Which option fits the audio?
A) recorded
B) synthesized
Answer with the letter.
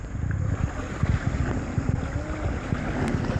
A